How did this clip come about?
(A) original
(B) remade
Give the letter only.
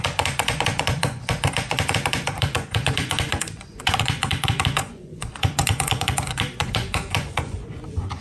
B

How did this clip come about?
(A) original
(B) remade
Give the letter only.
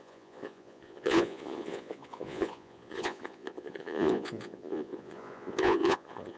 B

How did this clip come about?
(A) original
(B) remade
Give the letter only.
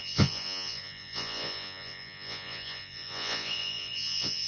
B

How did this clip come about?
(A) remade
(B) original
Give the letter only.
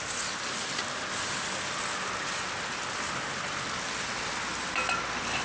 B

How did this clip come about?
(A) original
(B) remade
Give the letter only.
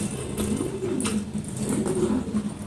A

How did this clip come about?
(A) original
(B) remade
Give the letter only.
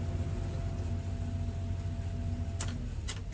A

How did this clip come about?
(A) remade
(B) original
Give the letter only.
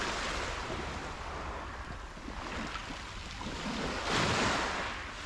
B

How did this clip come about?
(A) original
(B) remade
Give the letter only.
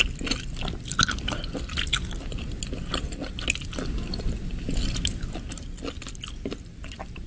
A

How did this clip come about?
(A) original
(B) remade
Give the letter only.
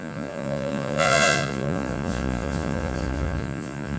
B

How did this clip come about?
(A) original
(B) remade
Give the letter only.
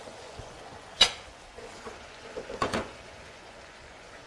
B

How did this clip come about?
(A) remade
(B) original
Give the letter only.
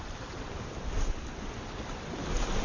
B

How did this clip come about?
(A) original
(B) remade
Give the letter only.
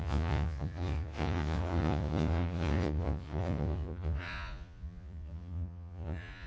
B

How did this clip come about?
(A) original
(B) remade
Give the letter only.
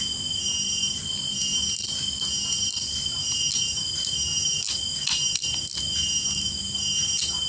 A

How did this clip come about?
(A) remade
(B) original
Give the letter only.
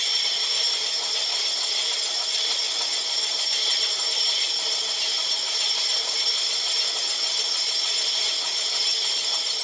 B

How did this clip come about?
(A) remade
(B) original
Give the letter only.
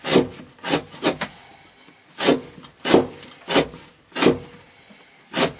B